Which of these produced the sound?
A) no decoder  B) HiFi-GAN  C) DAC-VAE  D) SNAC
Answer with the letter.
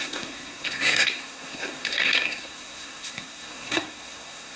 D